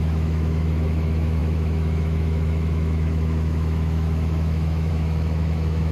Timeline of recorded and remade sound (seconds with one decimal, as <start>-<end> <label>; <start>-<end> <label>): 0.0-5.9 remade